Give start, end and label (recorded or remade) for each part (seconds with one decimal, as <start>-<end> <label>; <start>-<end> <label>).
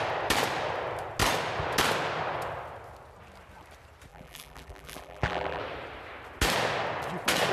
0.0-4.1 recorded; 4.1-5.6 remade; 5.6-7.5 recorded